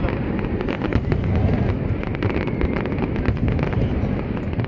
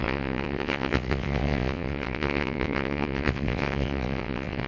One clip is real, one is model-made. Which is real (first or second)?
first